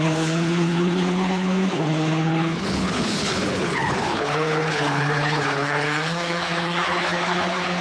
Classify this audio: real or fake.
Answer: fake